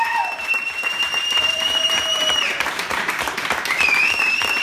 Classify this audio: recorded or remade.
remade